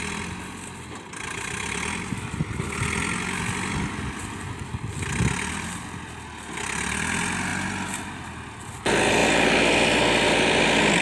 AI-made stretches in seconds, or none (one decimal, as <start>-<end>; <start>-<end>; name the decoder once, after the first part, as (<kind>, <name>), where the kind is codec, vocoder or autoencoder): none

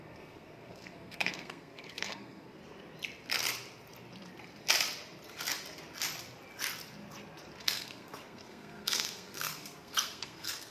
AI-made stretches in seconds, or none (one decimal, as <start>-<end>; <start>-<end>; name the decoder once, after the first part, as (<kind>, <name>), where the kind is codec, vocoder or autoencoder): 0.0-2.6 (codec, SNAC); 7.6-10.7